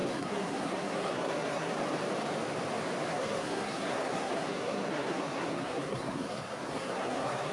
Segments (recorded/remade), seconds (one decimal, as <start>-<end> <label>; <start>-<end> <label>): 0.0-1.7 remade; 1.7-3.1 recorded; 3.1-7.5 remade